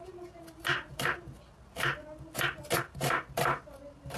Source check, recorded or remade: recorded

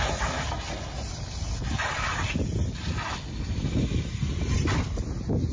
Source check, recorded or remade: recorded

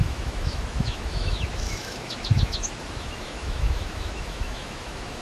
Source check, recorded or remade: remade